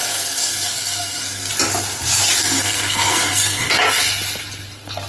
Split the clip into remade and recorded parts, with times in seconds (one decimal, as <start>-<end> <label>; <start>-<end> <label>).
0.0-1.5 remade; 1.5-2.4 recorded; 2.4-3.7 remade; 3.7-5.1 recorded